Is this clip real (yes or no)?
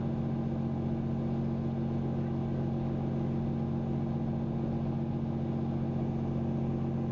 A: yes